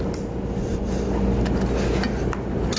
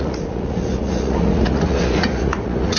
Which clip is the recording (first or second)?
first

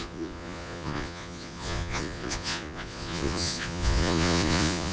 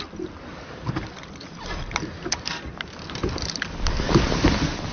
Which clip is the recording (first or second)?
second